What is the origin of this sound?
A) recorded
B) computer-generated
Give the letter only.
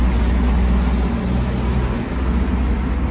A